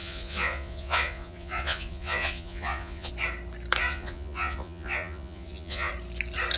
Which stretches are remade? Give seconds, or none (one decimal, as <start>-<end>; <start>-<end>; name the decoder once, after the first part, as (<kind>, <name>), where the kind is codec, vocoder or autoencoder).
0.0-3.1 (vocoder, Vocos); 3.8-5.9